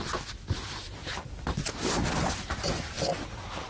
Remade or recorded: recorded